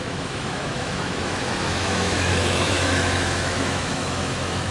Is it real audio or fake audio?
fake